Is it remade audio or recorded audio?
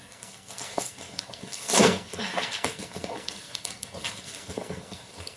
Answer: remade